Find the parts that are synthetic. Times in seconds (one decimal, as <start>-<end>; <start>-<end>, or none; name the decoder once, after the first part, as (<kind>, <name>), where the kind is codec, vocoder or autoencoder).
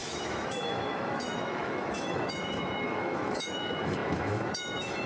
0.0-5.1 (autoencoder, DAC-VAE)